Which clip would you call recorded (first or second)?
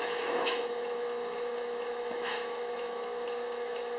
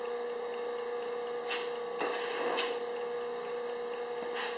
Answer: second